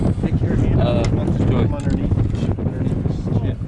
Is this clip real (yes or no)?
yes